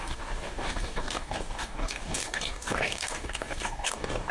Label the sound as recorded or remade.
remade